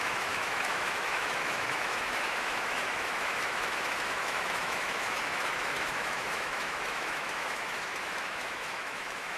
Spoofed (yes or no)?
yes